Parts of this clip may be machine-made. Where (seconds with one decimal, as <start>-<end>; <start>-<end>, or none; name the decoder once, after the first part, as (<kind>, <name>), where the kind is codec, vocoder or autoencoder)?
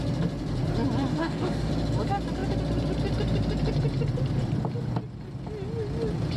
1.1-1.7 (codec, DAC)